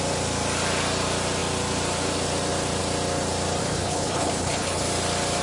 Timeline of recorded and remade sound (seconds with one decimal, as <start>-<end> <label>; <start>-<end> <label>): 0.0-3.6 recorded; 3.6-4.8 remade; 4.8-5.4 recorded